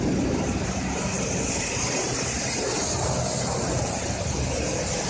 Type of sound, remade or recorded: recorded